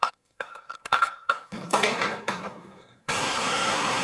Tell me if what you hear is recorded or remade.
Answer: remade